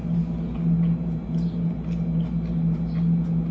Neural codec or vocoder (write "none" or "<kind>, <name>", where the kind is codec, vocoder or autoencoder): none